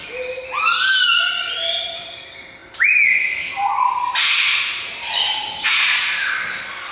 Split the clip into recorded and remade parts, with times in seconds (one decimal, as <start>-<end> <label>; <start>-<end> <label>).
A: 0.0-6.9 recorded